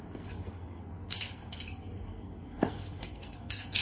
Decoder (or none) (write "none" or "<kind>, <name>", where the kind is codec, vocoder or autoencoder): codec, SNAC